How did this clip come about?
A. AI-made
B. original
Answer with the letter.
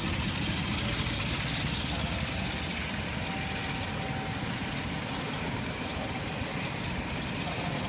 B